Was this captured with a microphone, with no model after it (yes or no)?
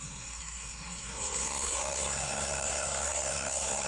no